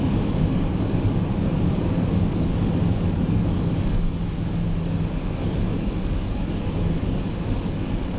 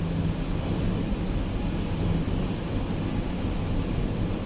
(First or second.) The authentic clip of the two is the second